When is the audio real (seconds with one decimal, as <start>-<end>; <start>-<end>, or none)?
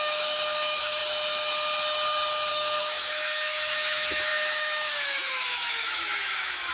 1.0-2.5